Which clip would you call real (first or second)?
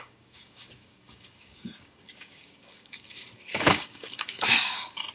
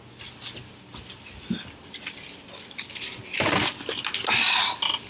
second